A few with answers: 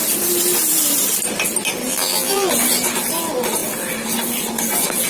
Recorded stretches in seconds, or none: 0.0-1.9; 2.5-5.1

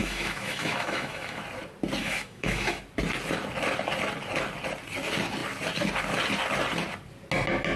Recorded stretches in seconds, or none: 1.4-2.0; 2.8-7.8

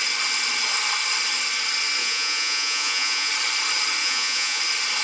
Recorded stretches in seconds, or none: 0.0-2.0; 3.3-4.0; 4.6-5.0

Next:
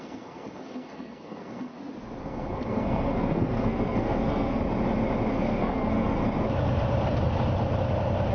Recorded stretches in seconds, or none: 1.7-2.2; 4.6-5.3; 6.2-8.3